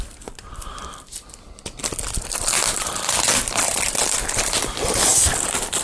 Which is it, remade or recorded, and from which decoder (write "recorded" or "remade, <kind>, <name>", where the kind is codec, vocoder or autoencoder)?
recorded